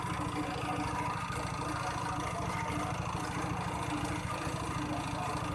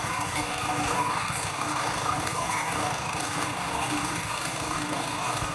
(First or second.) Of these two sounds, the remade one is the second